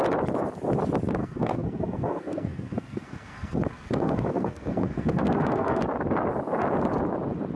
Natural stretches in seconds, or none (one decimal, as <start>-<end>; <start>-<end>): 0.0-1.2; 5.8-7.6